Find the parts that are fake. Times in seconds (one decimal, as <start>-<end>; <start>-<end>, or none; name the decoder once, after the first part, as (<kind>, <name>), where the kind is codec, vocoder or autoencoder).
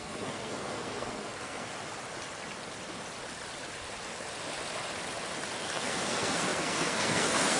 0.0-1.7 (codec, SNAC); 5.6-7.6